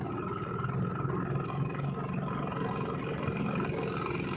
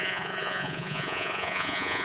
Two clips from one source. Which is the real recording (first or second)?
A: first